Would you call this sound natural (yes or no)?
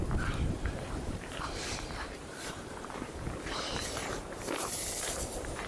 no